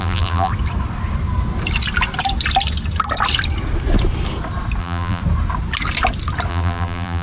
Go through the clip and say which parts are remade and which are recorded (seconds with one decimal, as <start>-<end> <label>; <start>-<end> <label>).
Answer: 0.0-0.5 remade; 0.5-4.8 recorded; 4.8-5.2 remade; 5.2-6.5 recorded; 6.5-7.2 remade